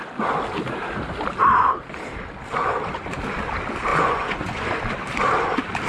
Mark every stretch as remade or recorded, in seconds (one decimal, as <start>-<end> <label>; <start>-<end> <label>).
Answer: 0.0-3.9 recorded; 3.9-4.8 remade; 4.8-5.9 recorded